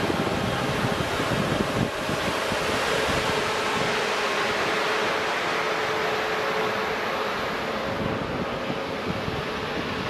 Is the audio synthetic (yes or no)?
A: no